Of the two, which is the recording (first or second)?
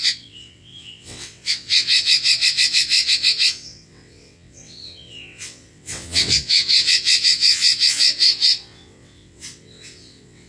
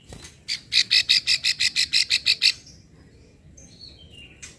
second